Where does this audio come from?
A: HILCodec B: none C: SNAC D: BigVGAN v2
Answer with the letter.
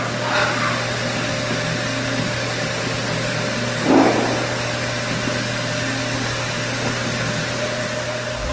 B